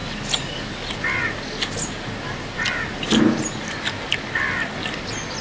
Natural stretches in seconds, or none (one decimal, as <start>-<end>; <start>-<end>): 0.0-5.4